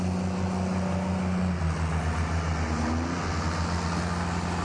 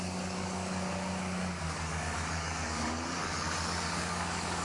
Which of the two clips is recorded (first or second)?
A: first